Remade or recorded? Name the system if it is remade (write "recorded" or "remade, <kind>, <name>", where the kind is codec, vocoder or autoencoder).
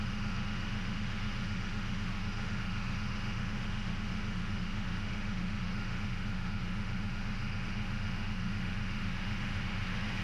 remade, autoencoder, DAC-VAE